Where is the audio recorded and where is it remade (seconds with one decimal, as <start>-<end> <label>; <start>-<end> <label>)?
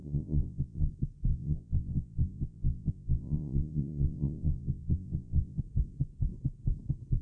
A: 0.0-0.9 remade; 0.9-1.3 recorded; 1.3-5.6 remade; 5.6-7.2 recorded